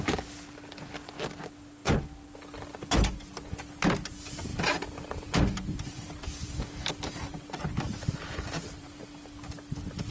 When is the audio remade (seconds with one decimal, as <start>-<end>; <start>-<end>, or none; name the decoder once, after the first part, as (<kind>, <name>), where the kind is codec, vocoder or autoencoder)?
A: 4.5-7.6 (vocoder, BigVGAN v2); 8.0-9.0